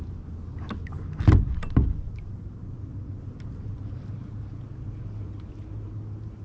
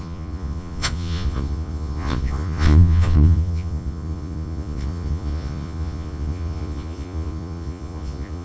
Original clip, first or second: first